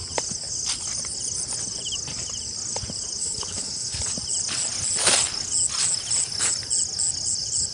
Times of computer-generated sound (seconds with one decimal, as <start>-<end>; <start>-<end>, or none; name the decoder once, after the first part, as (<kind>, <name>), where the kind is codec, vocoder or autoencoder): 3.2-4.0 (codec, HILCodec)